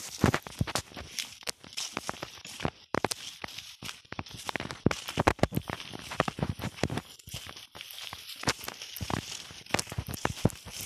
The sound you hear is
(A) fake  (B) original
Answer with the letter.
B